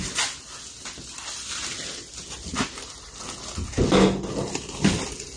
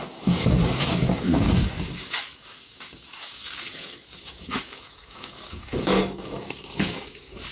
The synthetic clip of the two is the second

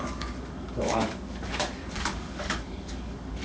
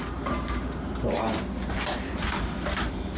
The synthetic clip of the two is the first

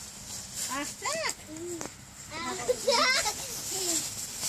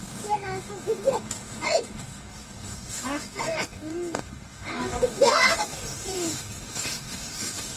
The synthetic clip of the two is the second